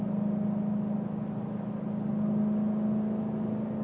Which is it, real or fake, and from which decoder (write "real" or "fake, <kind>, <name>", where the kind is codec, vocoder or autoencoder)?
real